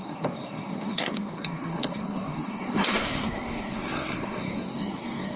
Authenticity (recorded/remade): remade